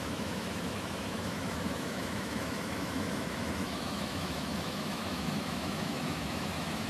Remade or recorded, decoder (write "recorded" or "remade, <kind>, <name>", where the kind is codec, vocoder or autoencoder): remade, autoencoder, DAC-VAE